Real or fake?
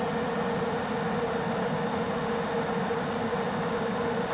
real